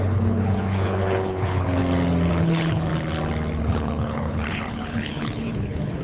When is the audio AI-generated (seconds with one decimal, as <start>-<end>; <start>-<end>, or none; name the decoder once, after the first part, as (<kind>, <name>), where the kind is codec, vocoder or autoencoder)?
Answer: 0.0-1.8 (codec, HILCodec); 2.3-2.9; 3.6-6.0